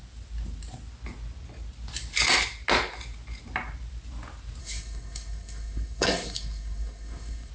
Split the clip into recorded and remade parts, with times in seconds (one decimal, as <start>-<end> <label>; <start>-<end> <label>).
0.0-4.6 recorded; 4.6-7.5 remade